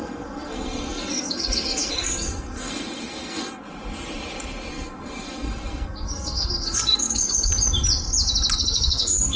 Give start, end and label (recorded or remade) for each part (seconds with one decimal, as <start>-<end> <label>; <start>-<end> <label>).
0.0-3.6 remade; 3.6-4.7 recorded; 4.7-7.5 remade; 7.5-8.6 recorded; 8.6-9.4 remade